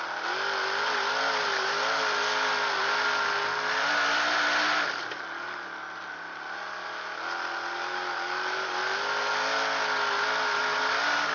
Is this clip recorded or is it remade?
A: recorded